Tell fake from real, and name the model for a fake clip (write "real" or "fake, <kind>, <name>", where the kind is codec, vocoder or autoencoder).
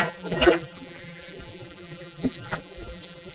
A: fake, vocoder, BigVGAN v2